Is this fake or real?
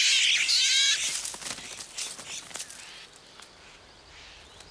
real